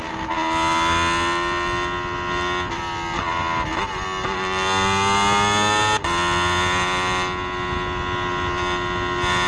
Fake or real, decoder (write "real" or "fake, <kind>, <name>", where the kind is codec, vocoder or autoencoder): real